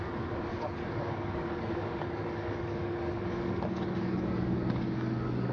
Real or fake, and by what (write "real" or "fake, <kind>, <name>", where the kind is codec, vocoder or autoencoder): fake, codec, DAC